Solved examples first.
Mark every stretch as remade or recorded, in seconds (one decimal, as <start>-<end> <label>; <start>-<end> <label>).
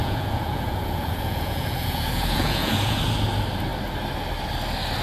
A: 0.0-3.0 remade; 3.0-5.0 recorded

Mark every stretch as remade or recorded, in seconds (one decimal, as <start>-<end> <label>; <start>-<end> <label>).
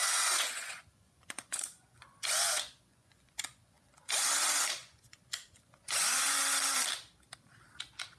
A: 0.0-4.1 remade; 4.1-4.8 recorded; 4.8-6.4 remade; 6.4-8.2 recorded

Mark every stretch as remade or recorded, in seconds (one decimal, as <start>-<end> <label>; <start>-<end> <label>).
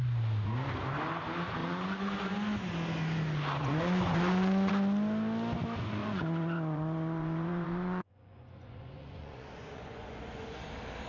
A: 0.0-1.6 recorded; 1.6-2.1 remade; 2.1-3.6 recorded; 3.6-4.7 remade; 4.7-6.0 recorded; 6.0-10.6 remade; 10.6-11.1 recorded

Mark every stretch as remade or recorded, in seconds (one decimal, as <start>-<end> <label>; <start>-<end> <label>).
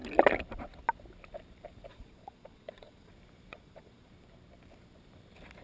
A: 0.0-1.9 recorded; 1.9-3.1 remade; 3.1-3.5 recorded; 3.5-4.1 remade; 4.1-5.6 recorded